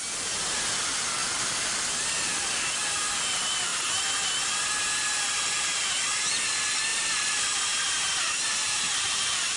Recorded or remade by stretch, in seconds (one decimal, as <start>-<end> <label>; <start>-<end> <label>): 0.0-3.7 remade; 3.7-5.2 recorded; 5.2-6.9 remade; 6.9-8.3 recorded; 8.3-9.6 remade